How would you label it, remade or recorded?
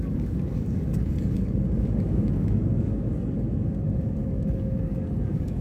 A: remade